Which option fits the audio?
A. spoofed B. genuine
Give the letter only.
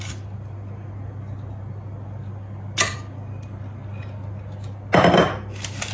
B